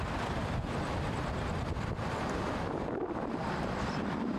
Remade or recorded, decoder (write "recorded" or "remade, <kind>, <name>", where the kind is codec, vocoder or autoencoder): remade, vocoder, BigVGAN v2